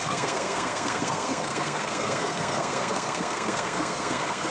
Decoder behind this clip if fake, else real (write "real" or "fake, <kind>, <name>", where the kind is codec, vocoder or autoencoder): fake, codec, SNAC